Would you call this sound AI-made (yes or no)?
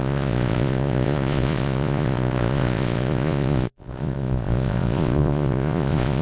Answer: yes